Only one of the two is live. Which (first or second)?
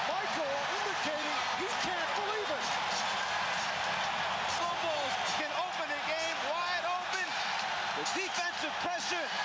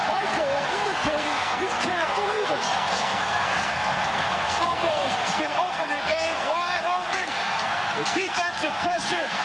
first